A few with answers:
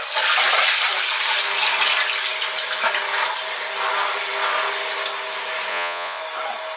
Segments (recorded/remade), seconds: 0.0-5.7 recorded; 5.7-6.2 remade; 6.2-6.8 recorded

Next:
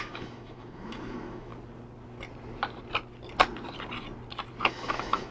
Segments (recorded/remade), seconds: 0.0-1.5 remade; 1.5-4.7 recorded; 4.7-5.3 remade

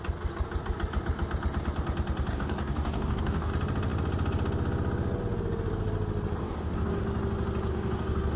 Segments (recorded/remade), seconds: 0.0-2.3 recorded; 2.3-3.5 remade; 3.5-6.4 recorded; 6.4-7.0 remade; 7.0-7.7 recorded; 7.7-8.4 remade

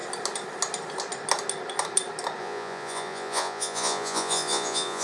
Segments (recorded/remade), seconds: 0.0-2.4 recorded; 2.4-5.0 remade